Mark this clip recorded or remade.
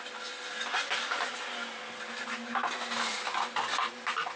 recorded